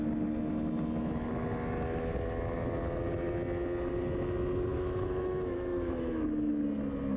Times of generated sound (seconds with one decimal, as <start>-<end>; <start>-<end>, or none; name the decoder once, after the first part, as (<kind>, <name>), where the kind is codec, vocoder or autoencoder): 4.7-6.5 (autoencoder, DAC-VAE)